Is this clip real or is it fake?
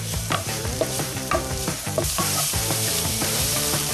fake